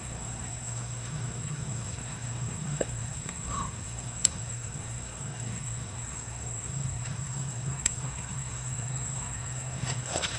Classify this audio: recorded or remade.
remade